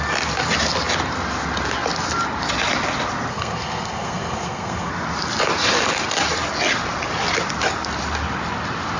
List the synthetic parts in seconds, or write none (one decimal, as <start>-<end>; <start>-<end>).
3.3-4.9